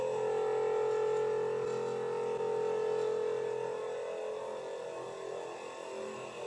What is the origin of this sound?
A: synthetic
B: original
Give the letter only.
B